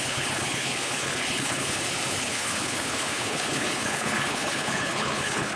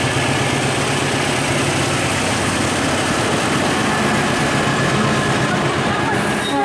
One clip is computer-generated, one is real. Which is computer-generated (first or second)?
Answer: first